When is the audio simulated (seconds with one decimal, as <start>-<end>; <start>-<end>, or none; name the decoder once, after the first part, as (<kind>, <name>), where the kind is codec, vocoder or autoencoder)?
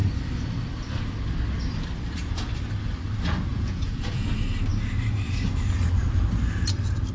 3.5-4.3 (vocoder, Vocos)